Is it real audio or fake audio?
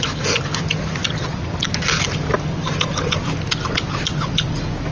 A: real